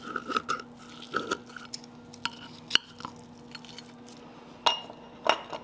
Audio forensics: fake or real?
real